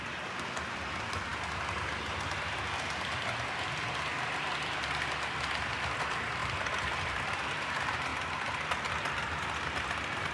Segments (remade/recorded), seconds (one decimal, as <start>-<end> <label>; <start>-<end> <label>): 0.0-1.3 remade; 1.3-6.0 recorded; 6.0-6.4 remade; 6.4-7.0 recorded; 7.0-10.3 remade